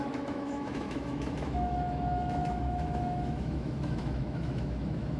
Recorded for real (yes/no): no